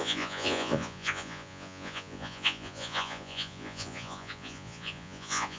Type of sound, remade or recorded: remade